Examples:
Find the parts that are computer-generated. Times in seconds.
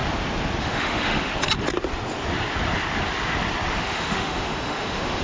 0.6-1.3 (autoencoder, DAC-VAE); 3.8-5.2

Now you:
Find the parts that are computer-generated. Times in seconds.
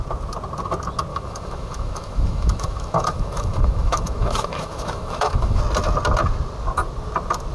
1.1-5.6 (autoencoder, DAC-VAE)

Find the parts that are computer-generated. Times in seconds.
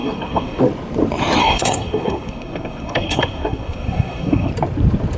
0.0-0.6 (codec, SNAC); 1.4-4.5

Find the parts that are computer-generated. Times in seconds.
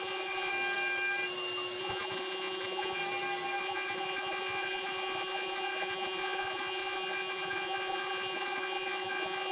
0.0-0.5 (vocoder, Vocos); 1.8-3.0; 3.6-9.5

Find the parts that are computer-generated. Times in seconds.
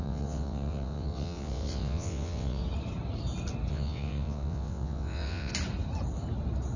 0.0-2.6 (vocoder, WaveNeXt); 3.7-5.5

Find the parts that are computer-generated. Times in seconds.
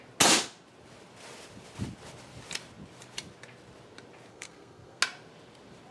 4.3-5.0 (codec, SNAC)